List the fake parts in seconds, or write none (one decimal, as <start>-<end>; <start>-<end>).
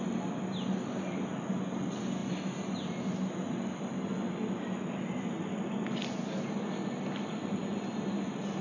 none